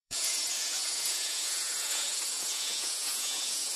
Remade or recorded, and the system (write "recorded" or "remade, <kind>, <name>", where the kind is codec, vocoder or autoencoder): remade, vocoder, Vocos